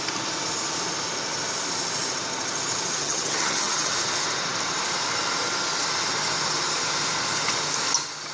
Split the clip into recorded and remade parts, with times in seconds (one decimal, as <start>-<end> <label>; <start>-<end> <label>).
0.0-3.0 recorded; 3.0-3.9 remade; 3.9-8.3 recorded